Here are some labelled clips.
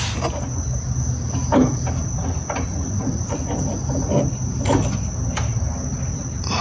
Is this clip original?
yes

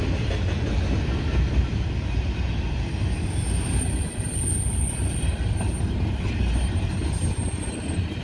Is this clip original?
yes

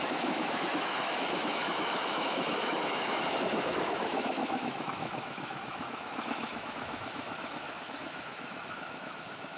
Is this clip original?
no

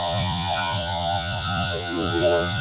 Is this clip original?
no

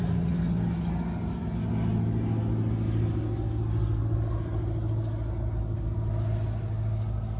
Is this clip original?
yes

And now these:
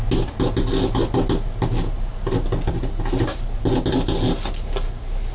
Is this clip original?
yes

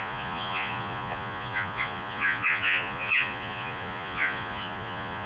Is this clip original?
no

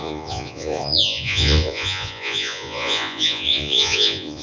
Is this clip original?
no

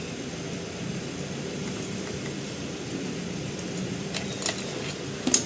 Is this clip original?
yes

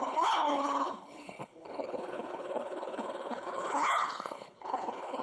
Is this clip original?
no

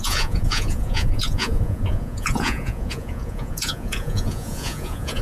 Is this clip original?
no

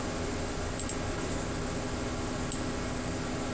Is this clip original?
yes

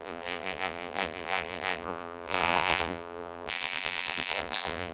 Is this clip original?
no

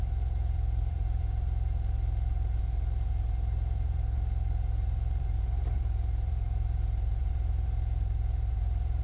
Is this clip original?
no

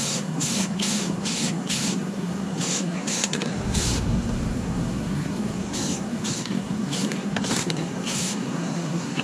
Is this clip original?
no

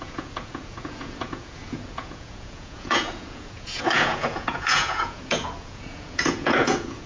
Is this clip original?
no